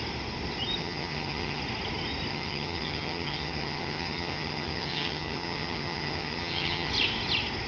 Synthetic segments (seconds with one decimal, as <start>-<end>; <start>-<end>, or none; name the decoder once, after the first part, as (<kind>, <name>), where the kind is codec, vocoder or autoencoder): 0.8-1.6 (vocoder, HiFi-GAN); 2.3-6.9